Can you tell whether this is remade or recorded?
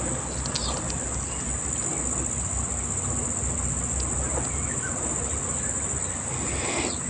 recorded